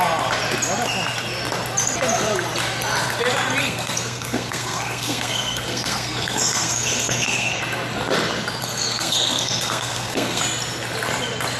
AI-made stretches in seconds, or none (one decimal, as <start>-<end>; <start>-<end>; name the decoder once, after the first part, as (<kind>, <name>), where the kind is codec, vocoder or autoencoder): 3.6-7.6 (codec, SNAC); 8.6-10.4